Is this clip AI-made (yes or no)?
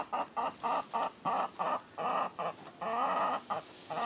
no